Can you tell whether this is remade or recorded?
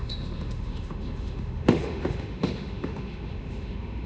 remade